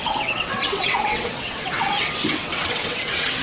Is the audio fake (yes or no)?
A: yes